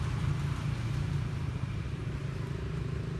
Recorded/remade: remade